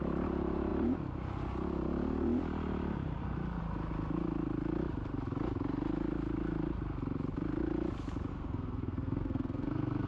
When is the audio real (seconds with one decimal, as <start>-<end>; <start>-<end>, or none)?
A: 0.0-8.3